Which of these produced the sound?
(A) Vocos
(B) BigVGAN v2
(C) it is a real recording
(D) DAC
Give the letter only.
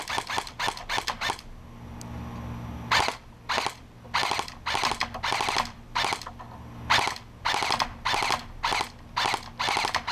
C